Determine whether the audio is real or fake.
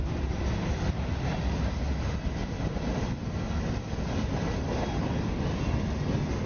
real